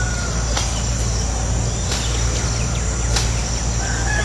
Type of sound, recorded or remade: recorded